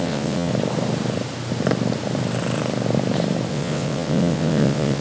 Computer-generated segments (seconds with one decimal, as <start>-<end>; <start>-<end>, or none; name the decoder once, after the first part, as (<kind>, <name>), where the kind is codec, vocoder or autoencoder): 0.0-0.5 (vocoder, WaveNeXt); 3.5-5.0